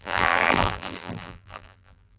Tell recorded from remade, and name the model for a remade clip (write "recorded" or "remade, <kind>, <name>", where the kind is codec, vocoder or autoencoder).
remade, vocoder, BigVGAN v2